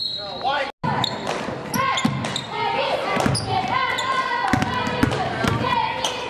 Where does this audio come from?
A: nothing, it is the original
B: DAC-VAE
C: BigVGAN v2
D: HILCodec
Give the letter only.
A